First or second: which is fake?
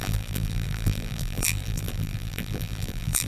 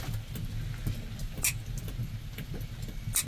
first